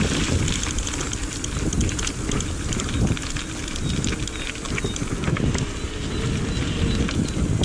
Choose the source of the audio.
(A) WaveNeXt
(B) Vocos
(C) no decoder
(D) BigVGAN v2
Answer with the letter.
C